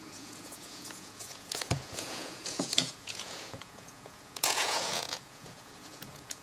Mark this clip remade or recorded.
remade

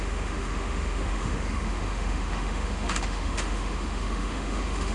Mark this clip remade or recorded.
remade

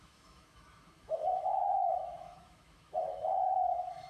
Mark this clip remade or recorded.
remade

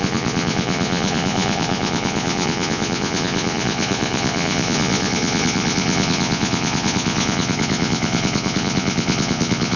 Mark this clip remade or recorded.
remade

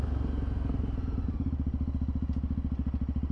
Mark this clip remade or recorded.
recorded